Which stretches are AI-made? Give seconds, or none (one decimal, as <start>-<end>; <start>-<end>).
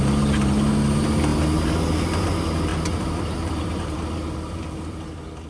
2.7-4.6